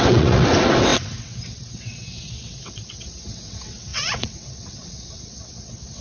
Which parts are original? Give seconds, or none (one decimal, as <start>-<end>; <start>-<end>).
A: none

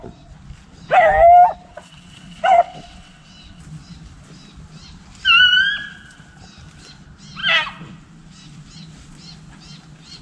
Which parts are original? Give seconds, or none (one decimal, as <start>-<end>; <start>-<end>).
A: 0.0-1.7; 3.6-10.2

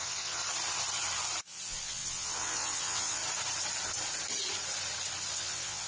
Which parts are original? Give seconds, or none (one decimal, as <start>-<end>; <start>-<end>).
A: 0.4-1.4; 3.2-5.3

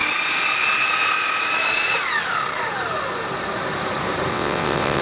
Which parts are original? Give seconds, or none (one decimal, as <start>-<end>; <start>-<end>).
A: 0.0-4.3

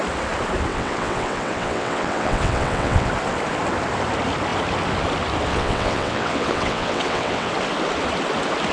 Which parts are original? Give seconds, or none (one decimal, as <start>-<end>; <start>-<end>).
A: 0.0-0.7; 3.1-5.5; 7.5-8.7

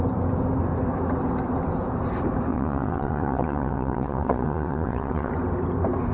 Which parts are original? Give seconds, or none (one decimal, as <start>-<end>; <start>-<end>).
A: 0.0-2.5; 5.3-6.1

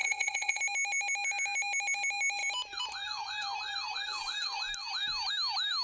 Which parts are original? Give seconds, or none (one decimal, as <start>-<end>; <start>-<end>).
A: 0.6-5.8

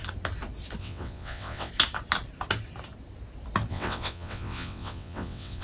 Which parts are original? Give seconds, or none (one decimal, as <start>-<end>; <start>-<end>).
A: 0.0-0.8; 1.7-3.7